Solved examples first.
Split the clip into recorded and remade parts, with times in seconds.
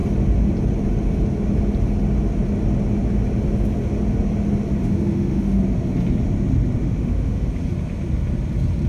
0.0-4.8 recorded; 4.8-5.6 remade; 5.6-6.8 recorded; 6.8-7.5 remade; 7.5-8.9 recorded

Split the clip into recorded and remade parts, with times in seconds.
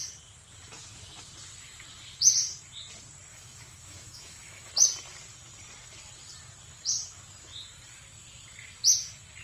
0.0-3.3 recorded; 3.3-4.7 remade; 4.7-9.4 recorded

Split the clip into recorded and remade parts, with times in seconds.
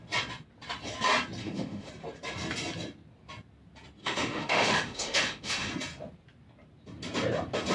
0.0-1.4 recorded; 1.4-1.9 remade; 1.9-4.0 recorded; 4.0-5.7 remade; 5.7-7.7 recorded